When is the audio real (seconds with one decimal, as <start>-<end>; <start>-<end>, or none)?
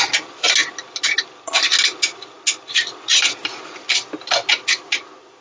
0.0-5.4